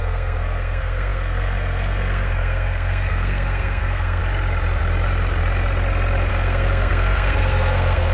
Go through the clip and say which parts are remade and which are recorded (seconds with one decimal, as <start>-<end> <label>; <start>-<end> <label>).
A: 0.0-4.2 remade; 4.2-6.3 recorded; 6.3-8.1 remade